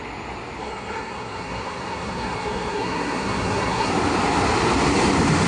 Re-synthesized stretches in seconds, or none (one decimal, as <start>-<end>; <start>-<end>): 0.6-3.9